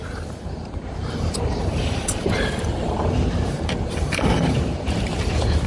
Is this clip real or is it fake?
fake